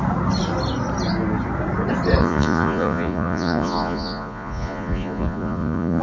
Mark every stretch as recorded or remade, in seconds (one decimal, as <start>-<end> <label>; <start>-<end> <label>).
0.0-2.2 recorded; 2.2-6.0 remade